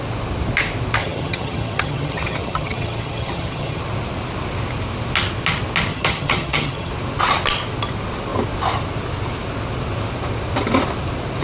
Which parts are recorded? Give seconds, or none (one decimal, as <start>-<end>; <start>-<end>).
0.0-1.0; 3.8-5.9; 6.9-11.4